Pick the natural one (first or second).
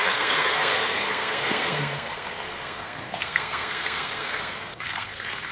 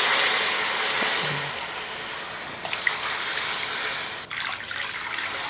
second